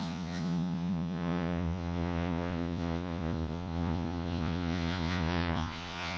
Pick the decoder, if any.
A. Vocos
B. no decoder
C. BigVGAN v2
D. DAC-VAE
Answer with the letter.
A